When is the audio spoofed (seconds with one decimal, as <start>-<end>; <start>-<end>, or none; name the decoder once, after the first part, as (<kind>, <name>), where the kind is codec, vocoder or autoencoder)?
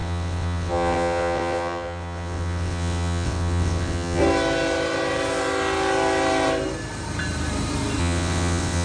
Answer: 0.0-4.2 (vocoder, WaveNeXt); 8.0-8.8